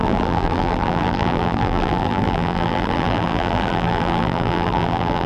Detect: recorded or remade remade